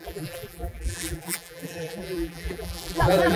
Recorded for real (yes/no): no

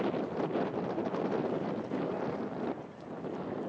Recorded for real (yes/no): no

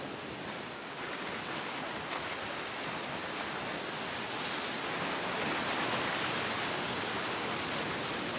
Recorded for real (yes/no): yes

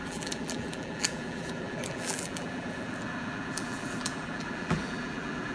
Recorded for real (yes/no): no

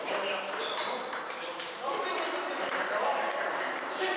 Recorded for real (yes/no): no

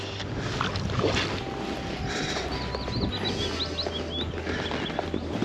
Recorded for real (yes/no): yes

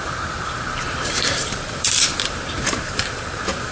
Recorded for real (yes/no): no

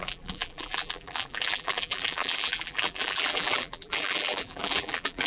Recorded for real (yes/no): no